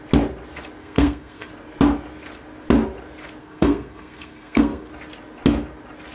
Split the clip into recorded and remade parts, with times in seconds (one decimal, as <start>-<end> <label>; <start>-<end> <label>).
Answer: 0.0-0.8 recorded; 0.8-1.5 remade; 1.5-3.4 recorded; 3.4-4.9 remade; 4.9-6.1 recorded